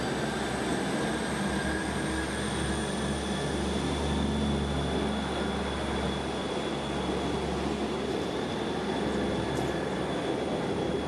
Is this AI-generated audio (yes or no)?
no